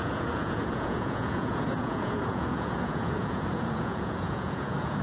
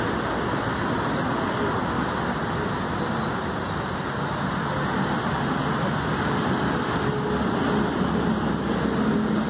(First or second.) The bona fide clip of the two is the second